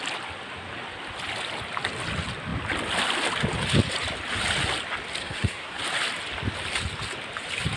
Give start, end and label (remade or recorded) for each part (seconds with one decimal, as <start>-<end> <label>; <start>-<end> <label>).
0.0-5.2 recorded; 5.2-5.8 remade; 5.8-7.8 recorded